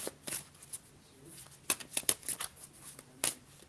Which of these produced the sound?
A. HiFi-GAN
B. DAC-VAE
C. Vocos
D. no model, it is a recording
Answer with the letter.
D